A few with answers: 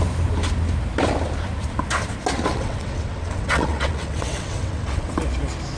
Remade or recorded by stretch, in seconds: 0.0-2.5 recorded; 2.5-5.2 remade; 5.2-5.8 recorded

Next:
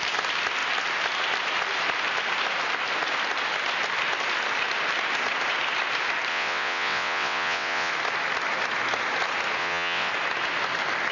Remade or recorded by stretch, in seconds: 0.0-6.3 recorded; 6.3-7.9 remade; 7.9-9.6 recorded; 9.6-10.1 remade; 10.1-11.1 recorded

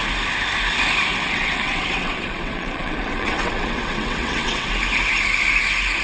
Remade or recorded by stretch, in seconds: 0.0-1.1 recorded; 1.1-4.7 remade; 4.7-6.0 recorded

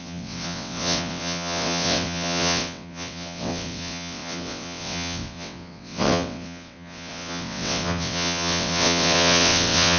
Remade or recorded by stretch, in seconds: 0.0-10.0 remade

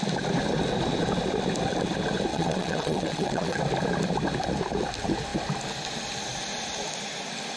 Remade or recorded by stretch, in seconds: 0.0-2.3 recorded; 2.3-3.6 remade; 3.6-7.6 recorded

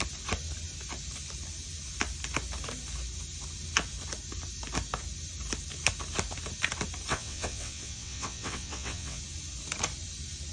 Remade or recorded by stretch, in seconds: 0.0-7.1 recorded; 7.1-9.2 remade; 9.2-10.5 recorded